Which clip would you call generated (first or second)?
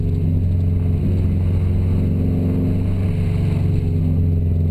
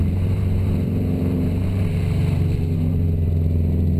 second